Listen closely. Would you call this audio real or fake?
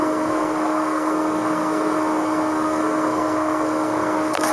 fake